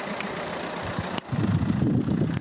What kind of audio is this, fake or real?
real